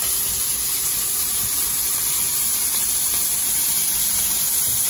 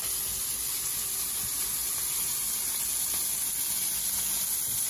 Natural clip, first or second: second